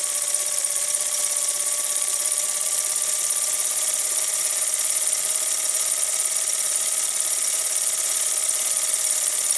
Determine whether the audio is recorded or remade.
remade